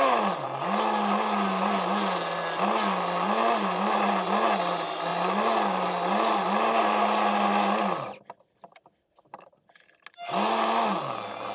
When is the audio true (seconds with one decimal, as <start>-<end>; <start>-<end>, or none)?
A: 0.0-11.5